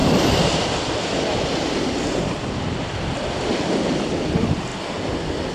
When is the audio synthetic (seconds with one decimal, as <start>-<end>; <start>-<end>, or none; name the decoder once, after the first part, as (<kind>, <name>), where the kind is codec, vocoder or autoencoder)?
0.0-3.3 (vocoder, BigVGAN v2)